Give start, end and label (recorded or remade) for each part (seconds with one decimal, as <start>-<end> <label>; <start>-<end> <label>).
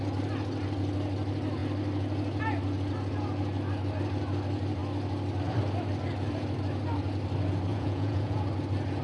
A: 0.0-7.7 recorded; 7.7-8.4 remade; 8.4-9.0 recorded